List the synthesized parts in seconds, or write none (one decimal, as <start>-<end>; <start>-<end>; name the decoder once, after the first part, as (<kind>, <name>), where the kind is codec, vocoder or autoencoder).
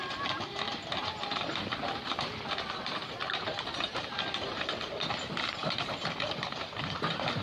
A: 1.0-4.9 (vocoder, BigVGAN v2); 5.6-7.0